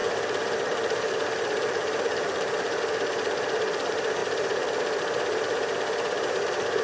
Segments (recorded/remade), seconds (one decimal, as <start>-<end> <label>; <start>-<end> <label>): 0.0-2.8 remade; 2.8-4.2 recorded; 4.2-5.0 remade; 5.0-6.8 recorded